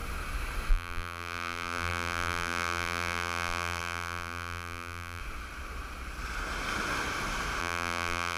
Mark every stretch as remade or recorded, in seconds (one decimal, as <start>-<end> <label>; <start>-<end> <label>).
0.0-0.7 recorded; 0.7-5.2 remade; 5.2-7.6 recorded; 7.6-8.4 remade

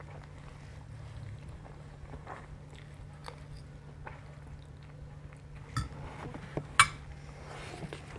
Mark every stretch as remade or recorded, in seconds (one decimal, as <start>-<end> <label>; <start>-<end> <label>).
0.0-0.7 recorded; 0.7-2.4 remade; 2.4-8.2 recorded

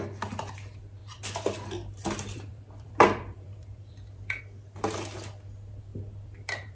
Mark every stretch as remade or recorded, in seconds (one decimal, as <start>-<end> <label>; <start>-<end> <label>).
0.0-1.0 recorded; 1.0-4.4 remade; 4.4-5.9 recorded; 5.9-6.8 remade

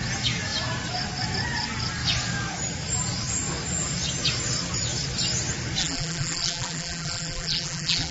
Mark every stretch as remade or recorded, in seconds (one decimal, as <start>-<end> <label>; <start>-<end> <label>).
0.0-5.8 recorded; 5.8-8.1 remade

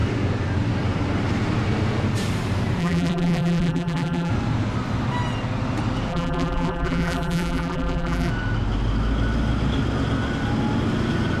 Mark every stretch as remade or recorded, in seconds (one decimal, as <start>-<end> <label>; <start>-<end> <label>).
0.0-2.8 recorded; 2.8-4.3 remade; 4.3-6.1 recorded; 6.1-8.3 remade; 8.3-11.4 recorded

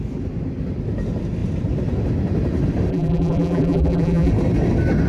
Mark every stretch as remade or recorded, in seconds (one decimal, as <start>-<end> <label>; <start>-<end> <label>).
0.0-2.9 recorded; 2.9-4.3 remade; 4.3-5.1 recorded

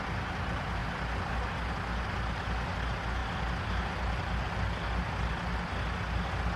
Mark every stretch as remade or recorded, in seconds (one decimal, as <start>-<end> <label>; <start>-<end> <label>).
0.0-6.6 recorded